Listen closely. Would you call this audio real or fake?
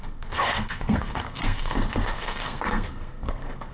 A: fake